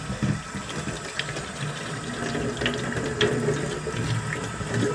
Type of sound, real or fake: real